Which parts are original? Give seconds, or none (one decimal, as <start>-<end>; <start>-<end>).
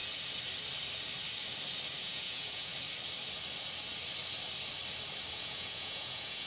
0.0-2.0; 2.7-5.3